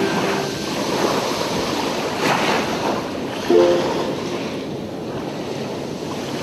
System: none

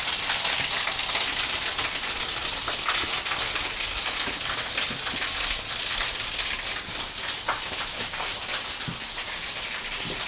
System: none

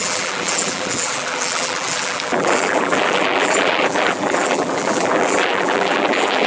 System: vocoder, BigVGAN v2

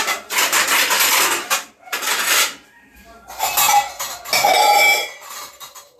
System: vocoder, BigVGAN v2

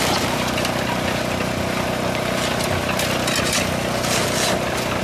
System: none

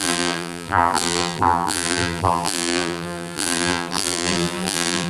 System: vocoder, BigVGAN v2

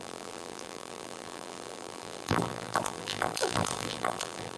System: vocoder, BigVGAN v2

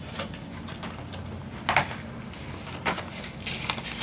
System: none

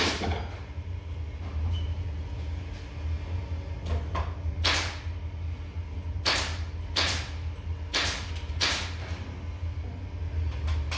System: none